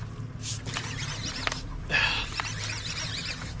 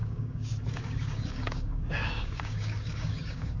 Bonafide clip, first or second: first